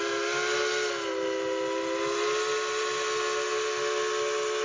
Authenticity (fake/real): real